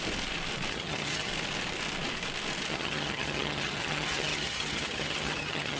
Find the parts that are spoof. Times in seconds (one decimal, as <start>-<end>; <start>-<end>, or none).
0.7-1.3; 2.7-5.8